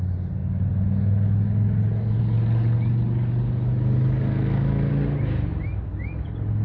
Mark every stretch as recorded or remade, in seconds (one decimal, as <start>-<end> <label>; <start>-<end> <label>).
0.0-4.3 recorded; 4.3-4.9 remade; 4.9-6.6 recorded